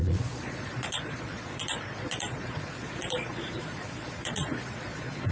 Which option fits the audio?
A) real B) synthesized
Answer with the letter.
B